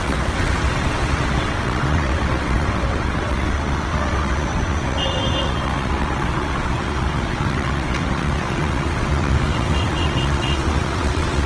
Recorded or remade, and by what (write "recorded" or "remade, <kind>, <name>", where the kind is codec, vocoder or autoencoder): remade, vocoder, WaveNeXt